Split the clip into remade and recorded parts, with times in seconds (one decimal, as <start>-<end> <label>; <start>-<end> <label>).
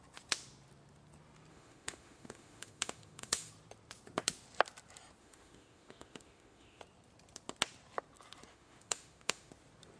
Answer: 0.0-1.5 recorded; 1.5-3.5 remade; 3.5-5.2 recorded; 5.2-6.8 remade; 6.8-8.5 recorded; 8.5-9.5 remade; 9.5-10.0 recorded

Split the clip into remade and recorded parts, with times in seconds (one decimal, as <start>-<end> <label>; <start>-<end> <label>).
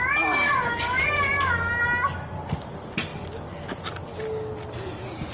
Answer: 0.0-5.3 recorded